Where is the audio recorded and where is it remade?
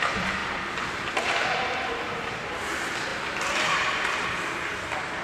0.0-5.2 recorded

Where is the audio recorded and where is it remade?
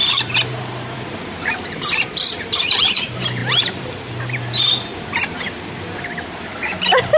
0.0-4.9 remade; 4.9-6.0 recorded; 6.0-7.2 remade